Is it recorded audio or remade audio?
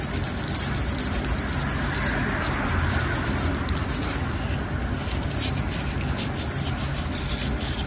recorded